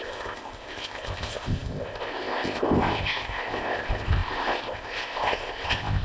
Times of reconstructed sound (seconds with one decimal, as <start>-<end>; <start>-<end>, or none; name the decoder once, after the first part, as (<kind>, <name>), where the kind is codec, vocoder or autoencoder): 0.0-6.0 (codec, ZipCodec)